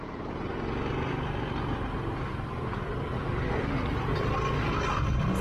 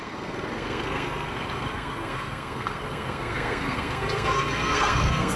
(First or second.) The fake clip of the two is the second